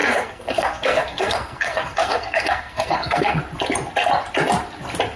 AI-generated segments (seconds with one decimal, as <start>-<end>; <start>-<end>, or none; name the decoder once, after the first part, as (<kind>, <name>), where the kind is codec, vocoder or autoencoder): 0.0-3.4 (codec, SNAC)